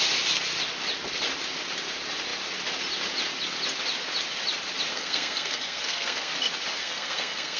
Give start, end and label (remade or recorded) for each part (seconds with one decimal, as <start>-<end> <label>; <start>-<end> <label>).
0.0-4.9 recorded; 4.9-6.3 remade; 6.3-6.8 recorded; 6.8-7.6 remade